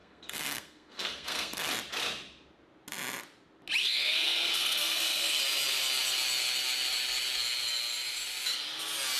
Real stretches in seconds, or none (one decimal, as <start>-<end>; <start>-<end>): 1.7-3.8; 5.4-9.2